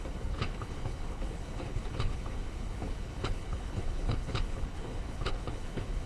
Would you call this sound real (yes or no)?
no